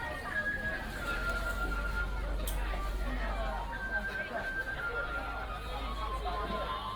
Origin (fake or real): real